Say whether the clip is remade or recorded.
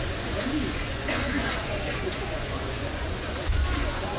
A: remade